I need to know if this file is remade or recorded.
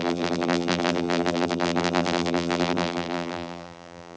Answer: remade